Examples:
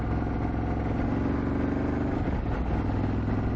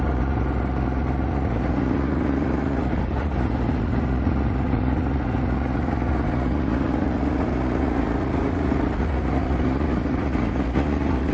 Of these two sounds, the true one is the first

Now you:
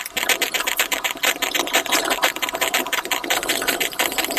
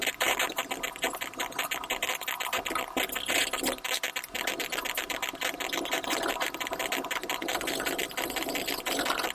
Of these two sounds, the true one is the second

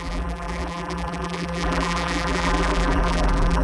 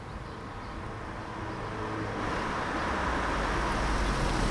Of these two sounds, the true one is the second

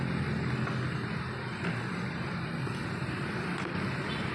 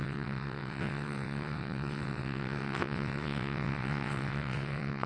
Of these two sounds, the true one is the first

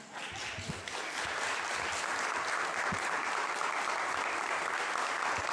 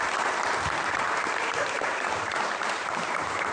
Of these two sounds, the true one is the first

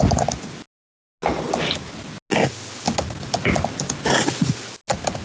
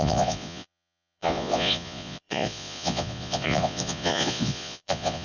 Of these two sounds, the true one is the first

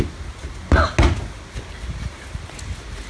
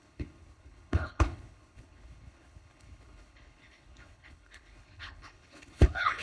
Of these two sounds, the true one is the first